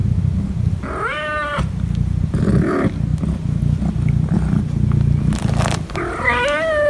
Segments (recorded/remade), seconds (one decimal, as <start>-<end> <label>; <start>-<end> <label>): 0.0-6.9 recorded